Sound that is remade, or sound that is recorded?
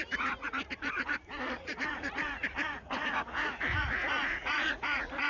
remade